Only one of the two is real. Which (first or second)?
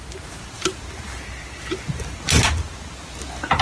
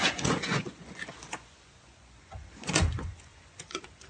first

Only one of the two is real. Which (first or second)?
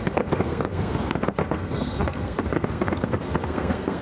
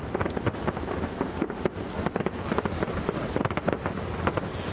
second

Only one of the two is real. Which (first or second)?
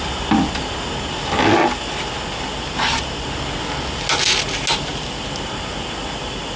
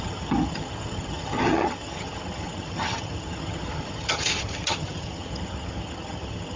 first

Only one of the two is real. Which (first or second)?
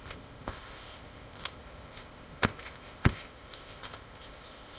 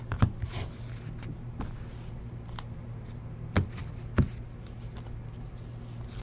second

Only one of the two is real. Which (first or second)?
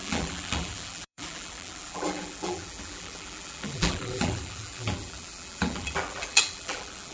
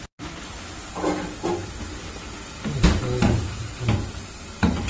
second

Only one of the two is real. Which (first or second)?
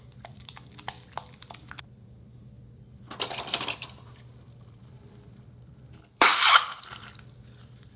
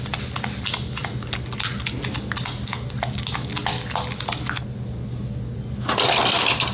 second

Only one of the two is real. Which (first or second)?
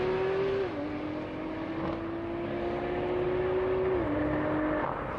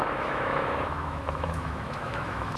first